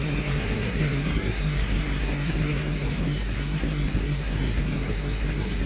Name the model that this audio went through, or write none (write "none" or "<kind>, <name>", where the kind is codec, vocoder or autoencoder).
codec, SNAC